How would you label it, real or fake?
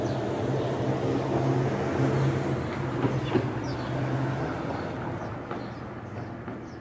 real